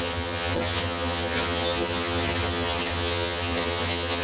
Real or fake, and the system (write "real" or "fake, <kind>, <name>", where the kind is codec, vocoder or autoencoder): fake, vocoder, HiFi-GAN